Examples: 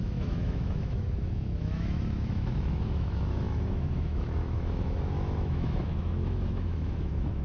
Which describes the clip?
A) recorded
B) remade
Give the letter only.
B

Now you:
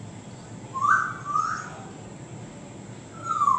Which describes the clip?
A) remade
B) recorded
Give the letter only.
B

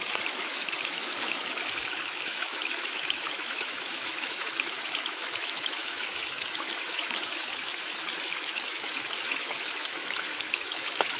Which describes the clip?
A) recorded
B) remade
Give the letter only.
B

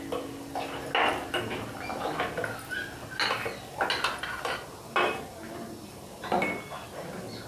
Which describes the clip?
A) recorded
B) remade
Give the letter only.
A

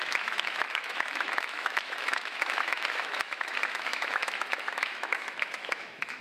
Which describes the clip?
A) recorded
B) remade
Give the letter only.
B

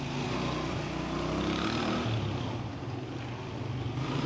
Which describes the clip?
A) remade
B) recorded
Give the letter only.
B